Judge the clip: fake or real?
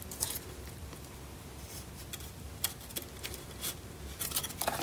real